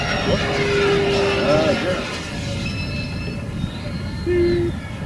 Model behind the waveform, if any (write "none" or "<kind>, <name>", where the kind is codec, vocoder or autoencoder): none